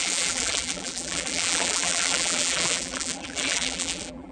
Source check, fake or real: fake